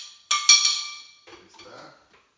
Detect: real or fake real